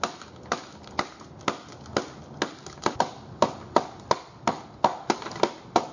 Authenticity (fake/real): real